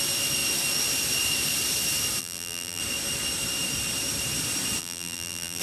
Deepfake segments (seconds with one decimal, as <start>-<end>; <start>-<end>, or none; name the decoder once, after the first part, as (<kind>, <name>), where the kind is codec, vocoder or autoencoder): 2.2-2.8 (vocoder, BigVGAN v2); 4.8-5.6